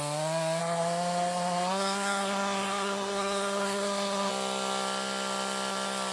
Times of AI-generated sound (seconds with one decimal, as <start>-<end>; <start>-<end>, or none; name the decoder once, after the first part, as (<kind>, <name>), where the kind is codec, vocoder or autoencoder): 0.6-4.3 (codec, SNAC)